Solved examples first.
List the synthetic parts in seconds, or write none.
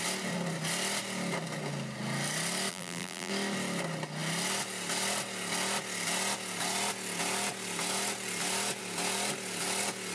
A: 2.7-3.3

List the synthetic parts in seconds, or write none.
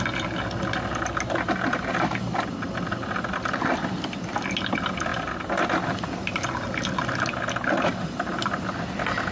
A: none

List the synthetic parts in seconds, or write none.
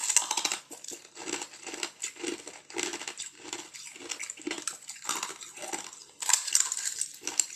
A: none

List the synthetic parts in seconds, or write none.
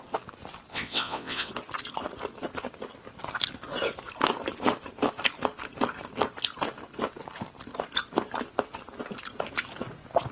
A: 0.7-1.5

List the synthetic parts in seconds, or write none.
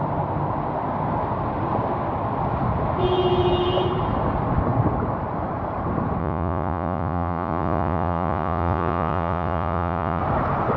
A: 6.2-10.2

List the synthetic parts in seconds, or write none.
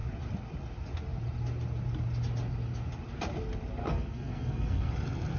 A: 3.8-4.9